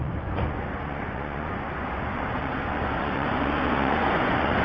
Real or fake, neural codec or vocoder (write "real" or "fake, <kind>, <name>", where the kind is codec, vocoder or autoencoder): fake, vocoder, Vocos